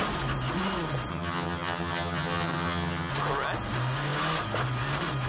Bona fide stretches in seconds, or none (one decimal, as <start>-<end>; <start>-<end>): 0.0-1.1; 3.1-5.3